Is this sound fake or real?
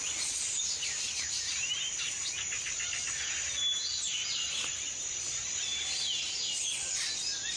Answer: real